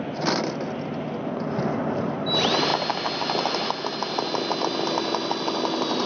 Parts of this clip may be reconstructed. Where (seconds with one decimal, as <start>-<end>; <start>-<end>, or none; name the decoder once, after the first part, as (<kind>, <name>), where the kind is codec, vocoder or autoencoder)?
none